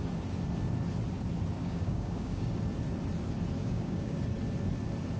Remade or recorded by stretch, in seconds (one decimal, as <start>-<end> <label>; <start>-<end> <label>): 0.0-1.6 recorded; 1.6-2.5 remade; 2.5-3.6 recorded; 3.6-4.2 remade; 4.2-5.2 recorded